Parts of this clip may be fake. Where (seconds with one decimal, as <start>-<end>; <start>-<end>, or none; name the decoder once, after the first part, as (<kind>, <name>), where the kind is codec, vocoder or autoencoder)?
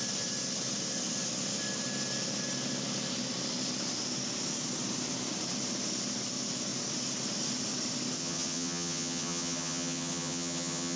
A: 8.2-11.0 (vocoder, HiFi-GAN)